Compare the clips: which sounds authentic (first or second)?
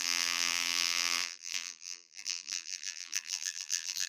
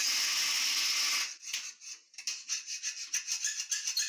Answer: second